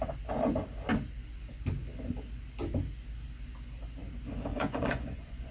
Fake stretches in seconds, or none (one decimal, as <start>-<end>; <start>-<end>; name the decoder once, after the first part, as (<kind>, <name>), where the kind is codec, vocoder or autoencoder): 4.5-5.5 (vocoder, Vocos)